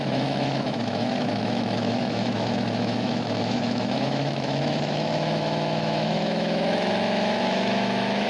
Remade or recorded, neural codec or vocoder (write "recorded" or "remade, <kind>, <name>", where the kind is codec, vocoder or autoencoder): remade, autoencoder, DAC-VAE